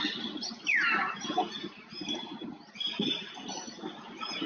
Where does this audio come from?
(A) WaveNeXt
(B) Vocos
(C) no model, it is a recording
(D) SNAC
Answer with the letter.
C